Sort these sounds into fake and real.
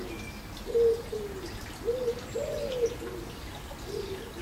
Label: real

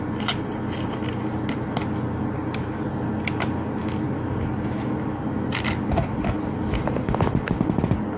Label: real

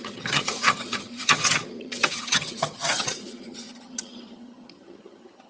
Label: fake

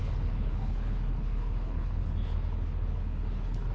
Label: fake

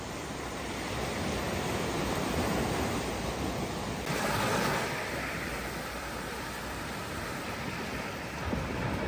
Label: real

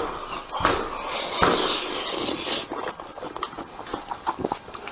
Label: real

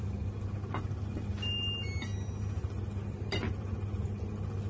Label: real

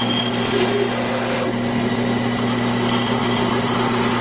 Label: real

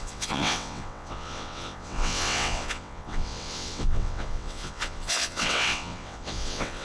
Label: fake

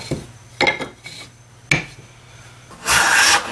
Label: real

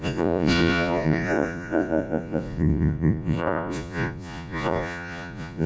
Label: fake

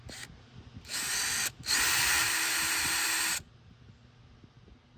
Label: real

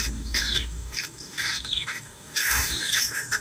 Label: fake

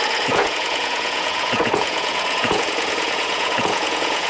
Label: fake